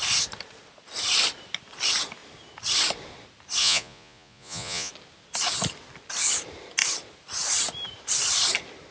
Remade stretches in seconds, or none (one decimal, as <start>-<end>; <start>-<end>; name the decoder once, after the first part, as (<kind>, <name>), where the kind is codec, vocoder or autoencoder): 3.6-4.9 (vocoder, Vocos)